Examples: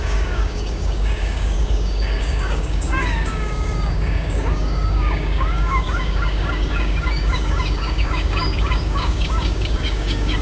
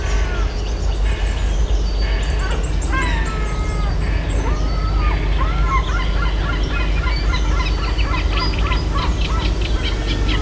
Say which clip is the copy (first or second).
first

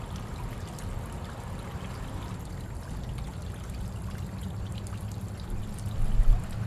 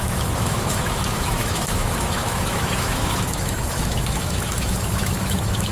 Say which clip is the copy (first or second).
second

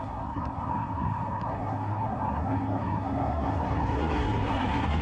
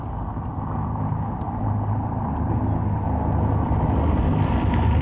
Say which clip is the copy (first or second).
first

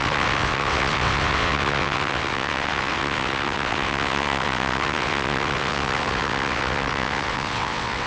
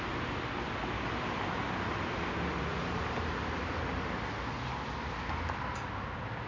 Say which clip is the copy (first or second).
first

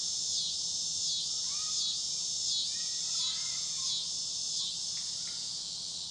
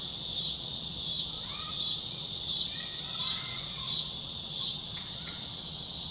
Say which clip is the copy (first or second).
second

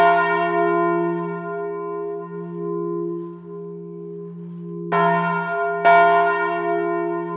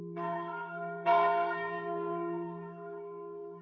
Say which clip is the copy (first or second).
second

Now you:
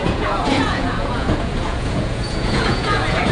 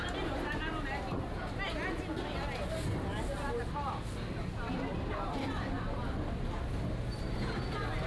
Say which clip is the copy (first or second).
first